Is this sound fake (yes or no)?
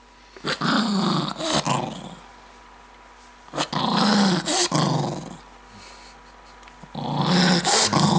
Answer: no